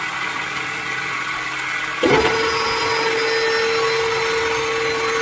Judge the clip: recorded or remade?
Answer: recorded